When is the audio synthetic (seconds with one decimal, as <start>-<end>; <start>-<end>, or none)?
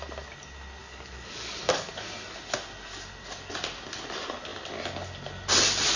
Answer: 0.8-1.6